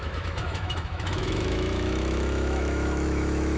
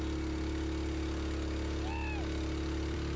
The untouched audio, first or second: second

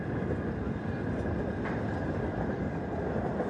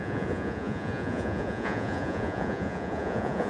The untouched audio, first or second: first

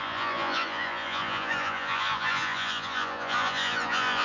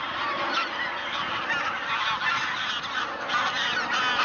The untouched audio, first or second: second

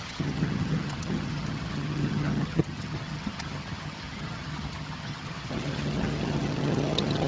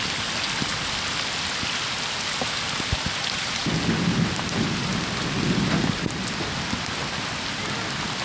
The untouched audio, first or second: second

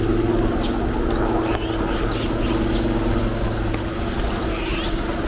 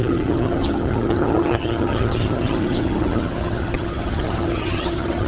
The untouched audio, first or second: first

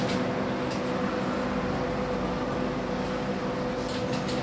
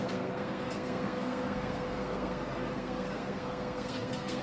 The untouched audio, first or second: first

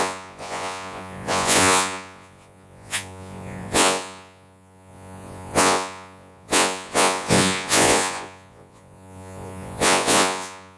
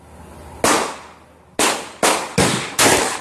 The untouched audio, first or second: second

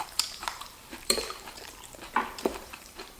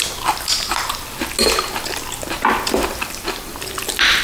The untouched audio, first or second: second